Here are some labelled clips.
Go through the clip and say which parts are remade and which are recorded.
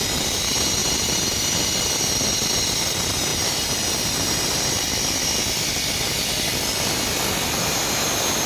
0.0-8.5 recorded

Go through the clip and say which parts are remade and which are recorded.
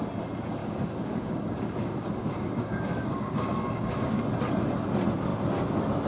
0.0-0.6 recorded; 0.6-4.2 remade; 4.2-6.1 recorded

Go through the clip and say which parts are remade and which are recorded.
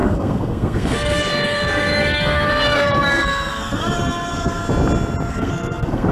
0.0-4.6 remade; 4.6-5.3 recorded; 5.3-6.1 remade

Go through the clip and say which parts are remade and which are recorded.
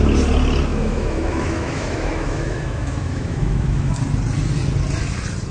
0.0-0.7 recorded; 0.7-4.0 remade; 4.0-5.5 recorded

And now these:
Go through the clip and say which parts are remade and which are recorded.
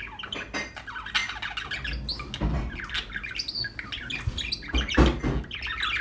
0.0-6.0 recorded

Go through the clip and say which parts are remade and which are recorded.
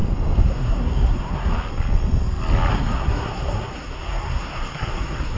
0.0-0.5 recorded; 0.5-1.5 remade; 1.5-2.7 recorded; 2.7-5.4 remade